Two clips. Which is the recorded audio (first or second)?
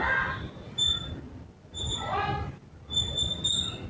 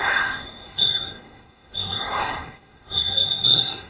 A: first